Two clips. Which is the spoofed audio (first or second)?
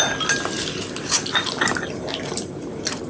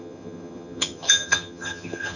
second